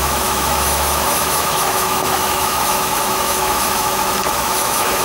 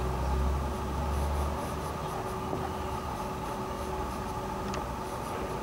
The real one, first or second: second